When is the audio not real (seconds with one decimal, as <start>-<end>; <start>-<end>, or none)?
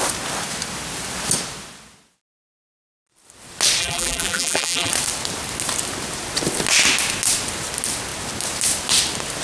3.8-4.9